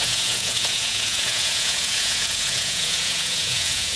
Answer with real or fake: fake